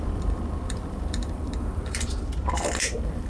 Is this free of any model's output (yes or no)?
no